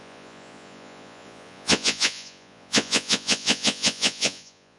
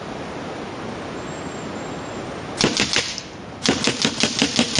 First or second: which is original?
second